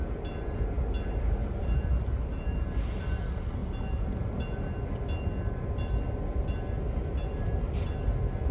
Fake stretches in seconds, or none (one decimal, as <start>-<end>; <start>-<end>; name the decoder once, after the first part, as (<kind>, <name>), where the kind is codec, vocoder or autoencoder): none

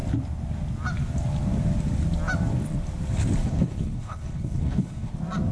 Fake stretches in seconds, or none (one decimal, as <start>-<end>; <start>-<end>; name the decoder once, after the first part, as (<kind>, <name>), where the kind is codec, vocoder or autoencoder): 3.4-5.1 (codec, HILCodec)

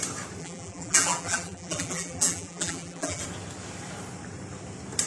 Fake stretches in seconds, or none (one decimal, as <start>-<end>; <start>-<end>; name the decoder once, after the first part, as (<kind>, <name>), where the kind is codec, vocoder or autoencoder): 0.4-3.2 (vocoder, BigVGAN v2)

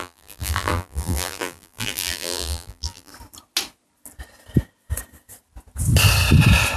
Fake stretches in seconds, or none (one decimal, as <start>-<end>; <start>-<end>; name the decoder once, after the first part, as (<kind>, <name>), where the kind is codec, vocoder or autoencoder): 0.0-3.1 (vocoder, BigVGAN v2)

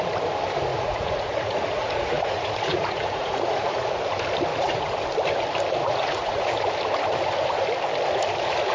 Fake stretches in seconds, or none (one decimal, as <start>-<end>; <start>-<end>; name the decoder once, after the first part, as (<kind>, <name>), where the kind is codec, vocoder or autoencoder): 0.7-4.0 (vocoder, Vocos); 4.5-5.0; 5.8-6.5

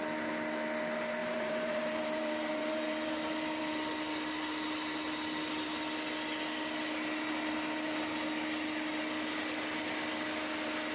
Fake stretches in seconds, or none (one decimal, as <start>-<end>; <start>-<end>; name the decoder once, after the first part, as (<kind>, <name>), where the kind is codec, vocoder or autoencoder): 1.2-3.6 (vocoder, BigVGAN v2)

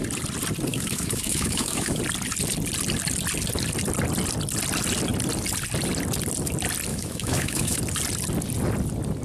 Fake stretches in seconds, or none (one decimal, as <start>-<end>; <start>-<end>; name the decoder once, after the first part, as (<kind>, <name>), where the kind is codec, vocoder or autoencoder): 0.7-2.0 (autoencoder, DAC-VAE); 6.9-7.8